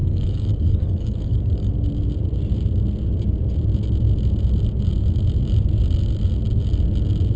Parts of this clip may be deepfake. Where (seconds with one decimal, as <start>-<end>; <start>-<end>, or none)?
0.0-1.7